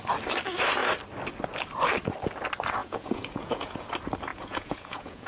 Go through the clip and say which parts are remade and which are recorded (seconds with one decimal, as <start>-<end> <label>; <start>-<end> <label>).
0.0-2.8 recorded; 2.8-3.9 remade; 3.9-4.3 recorded; 4.3-5.3 remade